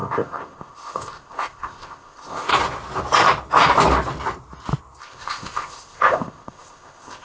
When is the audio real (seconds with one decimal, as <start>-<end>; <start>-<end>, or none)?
2.5-5.0